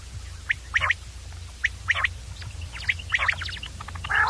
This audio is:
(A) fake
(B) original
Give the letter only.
B